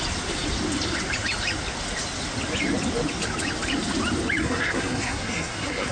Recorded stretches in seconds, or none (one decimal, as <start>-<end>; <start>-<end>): 0.0-4.4